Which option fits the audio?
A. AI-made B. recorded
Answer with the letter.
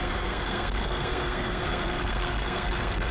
A